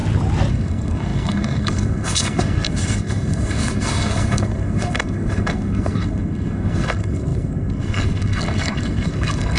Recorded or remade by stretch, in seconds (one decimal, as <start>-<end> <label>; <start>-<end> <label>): 0.0-0.5 recorded; 0.5-9.6 remade